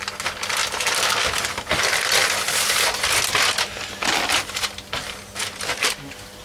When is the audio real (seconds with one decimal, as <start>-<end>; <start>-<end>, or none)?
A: 0.0-6.4